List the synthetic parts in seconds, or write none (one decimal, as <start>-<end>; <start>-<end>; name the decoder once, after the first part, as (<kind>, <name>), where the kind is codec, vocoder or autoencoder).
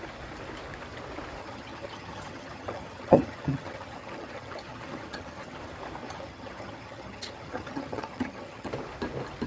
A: 1.4-5.6 (vocoder, HiFi-GAN); 6.0-8.7